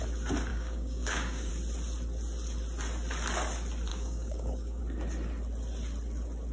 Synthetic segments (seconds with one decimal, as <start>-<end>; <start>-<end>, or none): 0.5-1.5; 3.9-4.8